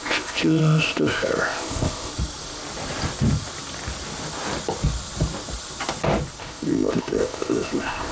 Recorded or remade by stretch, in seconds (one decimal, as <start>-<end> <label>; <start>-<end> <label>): 0.0-2.1 remade; 2.1-6.4 recorded; 6.4-8.1 remade